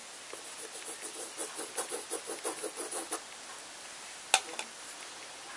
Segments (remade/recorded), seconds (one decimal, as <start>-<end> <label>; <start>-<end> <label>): 0.0-5.6 recorded